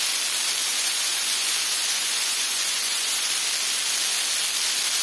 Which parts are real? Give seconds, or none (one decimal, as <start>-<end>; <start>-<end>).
0.0-0.6; 3.3-5.0